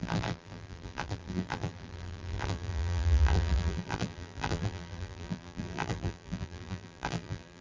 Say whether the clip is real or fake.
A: fake